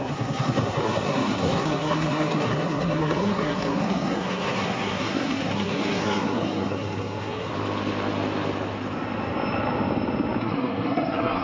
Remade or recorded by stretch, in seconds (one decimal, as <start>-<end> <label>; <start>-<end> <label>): 0.0-7.5 remade; 7.5-10.4 recorded; 10.4-11.4 remade